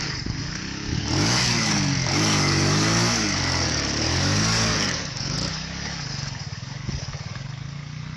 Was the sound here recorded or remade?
remade